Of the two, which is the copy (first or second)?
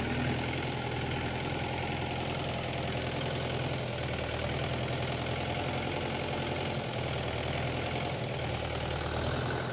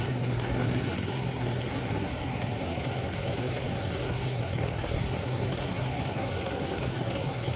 second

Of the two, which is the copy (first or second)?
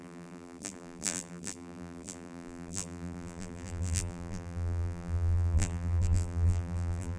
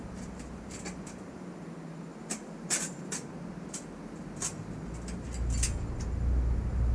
first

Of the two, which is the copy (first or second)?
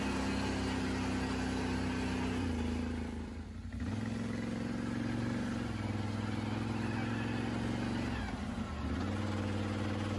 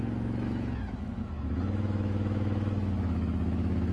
second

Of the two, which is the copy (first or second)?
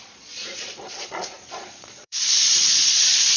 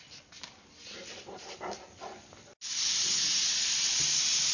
first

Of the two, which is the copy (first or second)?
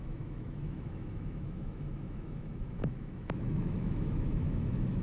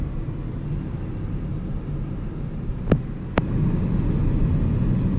first